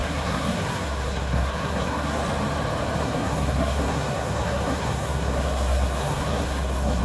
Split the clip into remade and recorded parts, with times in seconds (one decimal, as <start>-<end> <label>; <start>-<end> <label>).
0.0-2.2 remade; 2.2-3.0 recorded; 3.0-7.0 remade